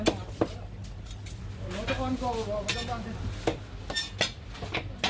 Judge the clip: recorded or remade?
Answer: recorded